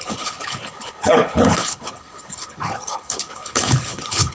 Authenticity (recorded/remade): remade